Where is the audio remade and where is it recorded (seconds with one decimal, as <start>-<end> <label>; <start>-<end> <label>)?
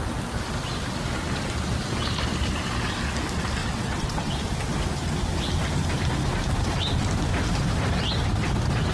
0.0-3.6 recorded; 3.6-4.3 remade; 4.3-8.9 recorded